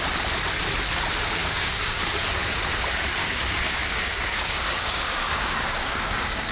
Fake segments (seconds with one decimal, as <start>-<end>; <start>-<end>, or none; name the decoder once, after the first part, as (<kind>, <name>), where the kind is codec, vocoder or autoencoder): 1.4-2.0 (codec, DAC); 3.2-6.5